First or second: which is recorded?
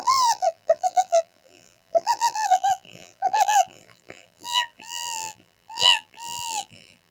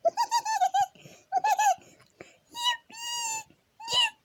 second